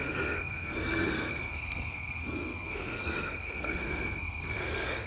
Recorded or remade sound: remade